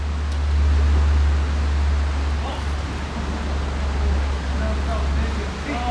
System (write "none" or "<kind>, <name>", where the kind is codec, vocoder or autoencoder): none